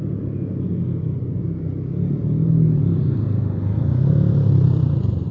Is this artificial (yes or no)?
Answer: no